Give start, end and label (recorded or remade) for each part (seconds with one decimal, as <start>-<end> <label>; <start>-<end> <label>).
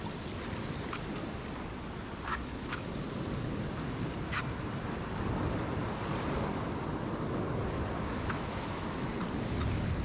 0.0-2.3 recorded; 2.3-2.9 remade; 2.9-8.1 recorded; 8.1-9.1 remade; 9.1-10.0 recorded